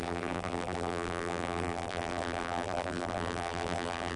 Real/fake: fake